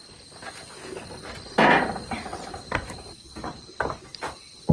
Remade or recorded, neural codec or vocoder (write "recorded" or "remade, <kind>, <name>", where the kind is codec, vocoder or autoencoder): recorded